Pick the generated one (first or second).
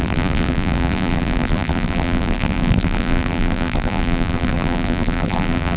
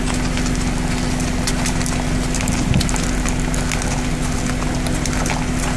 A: first